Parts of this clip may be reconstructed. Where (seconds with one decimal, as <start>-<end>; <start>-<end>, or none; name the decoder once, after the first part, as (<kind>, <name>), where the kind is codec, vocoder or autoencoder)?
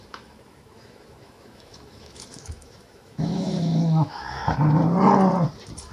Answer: 0.0-4.4 (autoencoder, DAC-VAE)